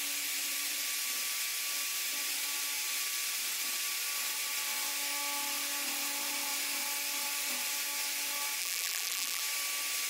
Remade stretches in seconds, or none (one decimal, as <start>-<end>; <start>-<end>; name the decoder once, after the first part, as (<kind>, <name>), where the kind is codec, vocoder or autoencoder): 8.6-9.4 (vocoder, BigVGAN v2)